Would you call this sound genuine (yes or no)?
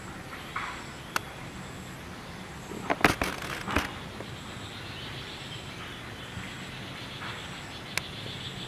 yes